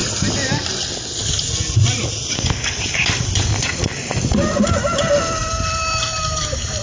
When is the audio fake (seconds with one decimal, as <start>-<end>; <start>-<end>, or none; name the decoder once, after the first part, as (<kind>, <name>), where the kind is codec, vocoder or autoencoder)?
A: 5.4-6.8 (vocoder, BigVGAN v2)